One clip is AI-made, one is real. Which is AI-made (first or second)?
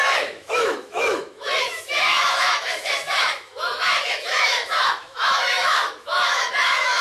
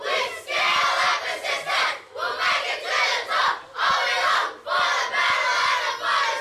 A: first